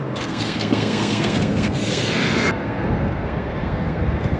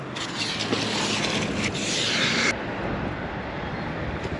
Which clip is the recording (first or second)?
second